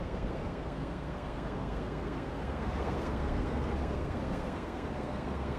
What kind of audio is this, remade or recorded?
remade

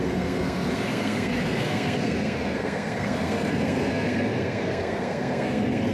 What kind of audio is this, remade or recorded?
remade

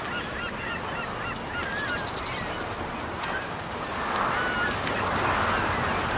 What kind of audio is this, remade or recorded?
recorded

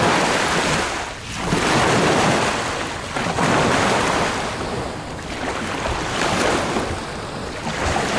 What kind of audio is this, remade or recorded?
recorded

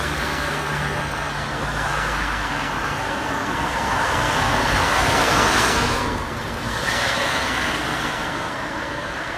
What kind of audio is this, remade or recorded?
remade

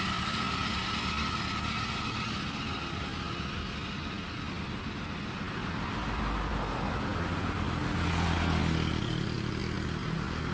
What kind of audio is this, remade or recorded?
recorded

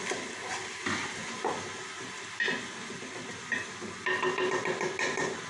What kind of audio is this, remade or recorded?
recorded